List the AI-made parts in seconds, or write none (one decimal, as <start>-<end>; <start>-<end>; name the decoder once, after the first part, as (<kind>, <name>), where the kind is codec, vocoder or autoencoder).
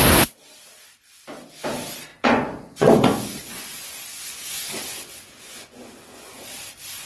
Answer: 2.1-6.4 (vocoder, Vocos)